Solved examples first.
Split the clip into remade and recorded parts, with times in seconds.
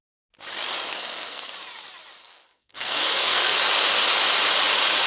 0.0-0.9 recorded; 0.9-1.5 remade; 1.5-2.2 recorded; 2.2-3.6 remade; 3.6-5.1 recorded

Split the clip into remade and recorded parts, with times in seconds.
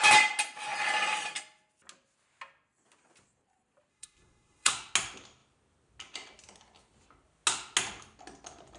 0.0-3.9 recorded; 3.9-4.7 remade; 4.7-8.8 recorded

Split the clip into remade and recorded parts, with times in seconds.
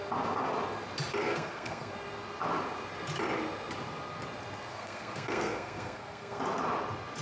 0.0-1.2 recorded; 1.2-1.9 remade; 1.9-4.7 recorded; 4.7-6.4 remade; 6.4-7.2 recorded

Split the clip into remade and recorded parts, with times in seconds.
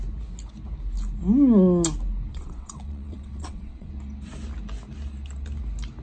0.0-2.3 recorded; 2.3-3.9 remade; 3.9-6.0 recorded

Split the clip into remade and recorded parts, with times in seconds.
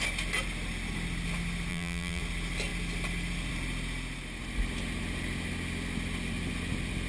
0.0-1.7 recorded; 1.7-2.2 remade; 2.2-7.1 recorded